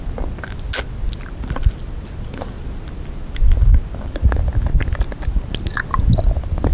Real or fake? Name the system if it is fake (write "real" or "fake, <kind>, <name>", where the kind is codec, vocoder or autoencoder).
real